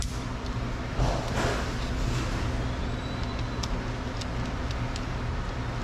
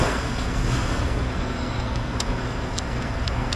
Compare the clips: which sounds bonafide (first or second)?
first